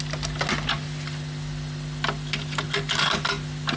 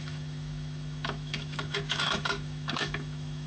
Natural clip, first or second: first